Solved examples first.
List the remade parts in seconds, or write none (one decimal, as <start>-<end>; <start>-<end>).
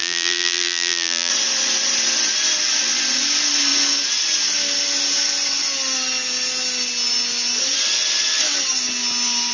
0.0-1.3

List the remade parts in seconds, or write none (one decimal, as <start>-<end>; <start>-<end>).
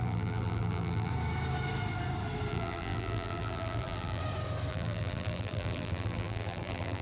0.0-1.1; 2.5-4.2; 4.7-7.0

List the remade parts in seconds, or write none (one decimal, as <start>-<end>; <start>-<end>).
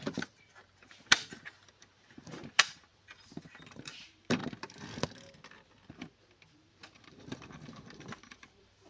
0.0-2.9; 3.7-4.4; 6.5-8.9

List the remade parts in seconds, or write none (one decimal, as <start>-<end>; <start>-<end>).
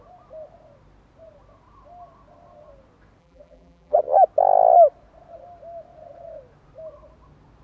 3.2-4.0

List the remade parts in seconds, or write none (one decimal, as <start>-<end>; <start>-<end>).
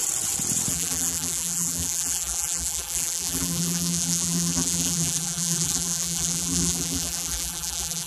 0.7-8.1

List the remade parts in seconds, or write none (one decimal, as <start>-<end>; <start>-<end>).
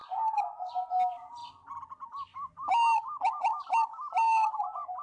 none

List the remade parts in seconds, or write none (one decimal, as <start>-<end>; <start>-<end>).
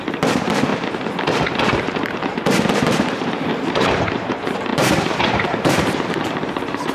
0.0-0.7; 1.5-6.9